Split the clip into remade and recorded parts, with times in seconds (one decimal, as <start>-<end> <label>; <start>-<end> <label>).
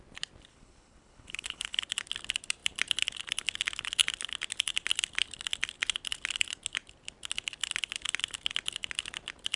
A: 0.0-0.5 recorded; 0.5-1.8 remade; 1.8-9.6 recorded